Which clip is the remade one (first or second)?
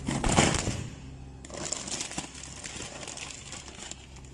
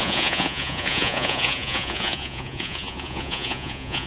second